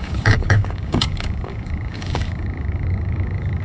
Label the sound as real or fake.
fake